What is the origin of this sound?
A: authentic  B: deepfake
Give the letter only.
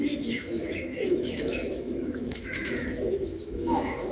B